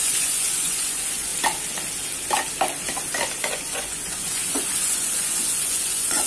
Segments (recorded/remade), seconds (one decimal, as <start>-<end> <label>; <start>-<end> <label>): 0.0-1.3 remade; 1.3-3.4 recorded; 3.4-6.3 remade